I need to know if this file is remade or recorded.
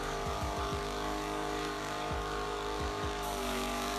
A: remade